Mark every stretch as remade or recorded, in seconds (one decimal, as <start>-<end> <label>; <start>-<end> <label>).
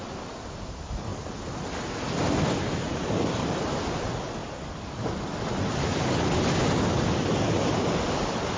0.0-8.6 recorded